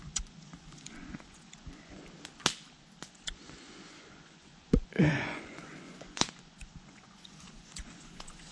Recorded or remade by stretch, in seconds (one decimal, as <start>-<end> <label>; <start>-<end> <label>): 0.0-2.0 remade; 2.0-3.0 recorded; 3.0-8.5 remade